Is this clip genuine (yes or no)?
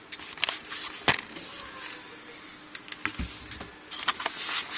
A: yes